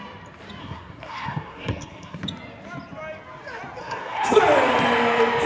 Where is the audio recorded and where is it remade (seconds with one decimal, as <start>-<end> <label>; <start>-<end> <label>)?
0.0-0.6 recorded; 0.6-2.2 remade; 2.2-3.8 recorded; 3.8-4.4 remade; 4.4-5.5 recorded

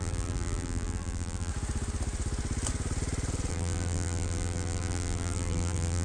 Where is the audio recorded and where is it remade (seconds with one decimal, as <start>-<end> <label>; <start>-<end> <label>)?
0.0-1.5 remade; 1.5-3.5 recorded; 3.5-6.0 remade